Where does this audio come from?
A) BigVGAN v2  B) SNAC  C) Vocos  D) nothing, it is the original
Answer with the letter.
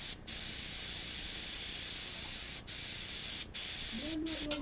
D